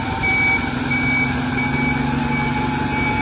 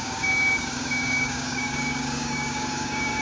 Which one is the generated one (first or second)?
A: second